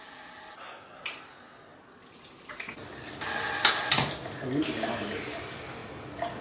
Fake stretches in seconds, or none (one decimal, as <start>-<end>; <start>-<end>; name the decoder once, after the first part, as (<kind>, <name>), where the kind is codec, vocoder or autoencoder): none